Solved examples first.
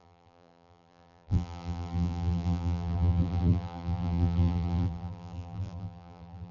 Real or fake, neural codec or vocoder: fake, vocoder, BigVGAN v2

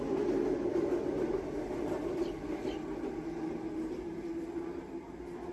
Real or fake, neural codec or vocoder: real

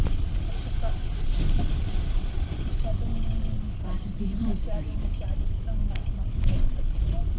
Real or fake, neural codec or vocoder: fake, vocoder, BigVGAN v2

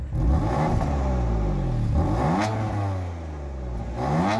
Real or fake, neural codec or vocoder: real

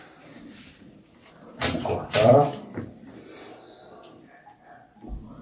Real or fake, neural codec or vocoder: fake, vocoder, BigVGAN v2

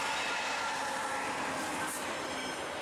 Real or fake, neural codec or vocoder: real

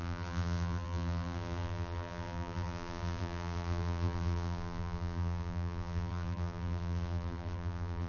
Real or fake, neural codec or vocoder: fake, vocoder, BigVGAN v2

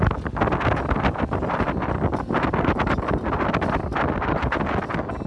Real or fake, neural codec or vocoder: real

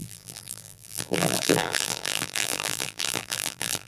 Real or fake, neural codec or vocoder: fake, vocoder, BigVGAN v2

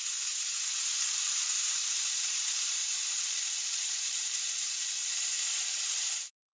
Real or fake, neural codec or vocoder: fake, vocoder, BigVGAN v2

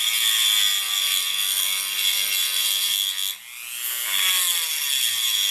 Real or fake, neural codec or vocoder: real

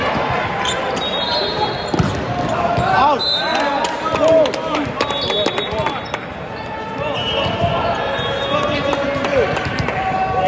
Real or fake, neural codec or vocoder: real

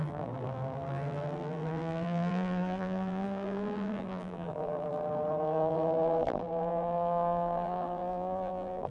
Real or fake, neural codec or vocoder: fake, vocoder, BigVGAN v2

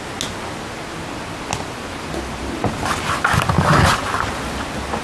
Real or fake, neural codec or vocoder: real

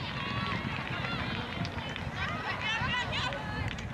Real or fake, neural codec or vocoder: real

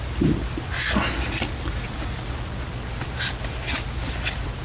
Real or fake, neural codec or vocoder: real